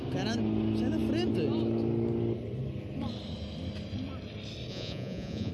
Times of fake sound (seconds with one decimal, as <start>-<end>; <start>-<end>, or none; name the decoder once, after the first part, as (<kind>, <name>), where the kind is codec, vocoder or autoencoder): 4.7-5.5 (vocoder, Vocos)

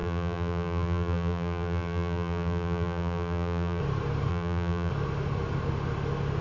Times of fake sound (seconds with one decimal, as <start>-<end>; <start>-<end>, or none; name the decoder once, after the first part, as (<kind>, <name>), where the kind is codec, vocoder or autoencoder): 0.0-3.8 (vocoder, BigVGAN v2); 4.3-4.9

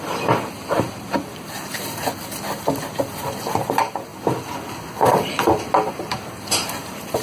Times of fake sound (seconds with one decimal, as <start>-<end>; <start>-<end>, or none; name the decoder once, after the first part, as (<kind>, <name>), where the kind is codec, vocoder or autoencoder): 0.0-2.0 (vocoder, BigVGAN v2); 3.5-4.1; 5.9-7.2